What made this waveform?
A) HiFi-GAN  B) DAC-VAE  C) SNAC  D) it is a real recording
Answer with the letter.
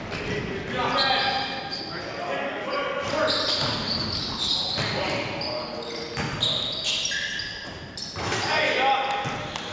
D